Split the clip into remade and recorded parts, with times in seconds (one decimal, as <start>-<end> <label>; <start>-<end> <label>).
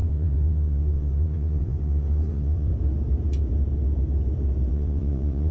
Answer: 0.0-2.7 remade; 2.7-4.7 recorded; 4.7-5.5 remade